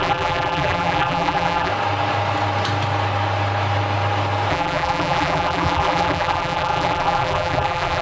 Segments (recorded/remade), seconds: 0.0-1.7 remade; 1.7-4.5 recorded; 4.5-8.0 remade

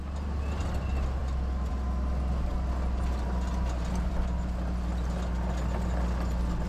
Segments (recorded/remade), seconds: 0.0-6.7 recorded